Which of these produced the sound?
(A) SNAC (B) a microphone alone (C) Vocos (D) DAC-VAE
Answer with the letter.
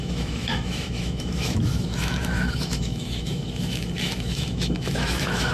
D